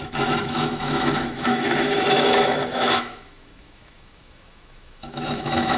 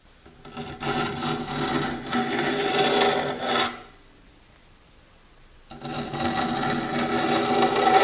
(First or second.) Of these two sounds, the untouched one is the second